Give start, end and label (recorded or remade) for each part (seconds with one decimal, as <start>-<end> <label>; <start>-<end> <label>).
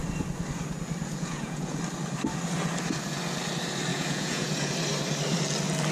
0.0-1.1 recorded; 1.1-1.8 remade; 1.8-3.9 recorded; 3.9-4.7 remade; 4.7-5.9 recorded